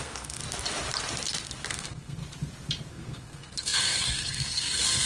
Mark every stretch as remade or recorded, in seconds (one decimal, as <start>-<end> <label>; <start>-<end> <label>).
0.0-0.4 remade; 0.4-1.7 recorded; 1.7-2.2 remade; 2.2-2.9 recorded; 2.9-5.1 remade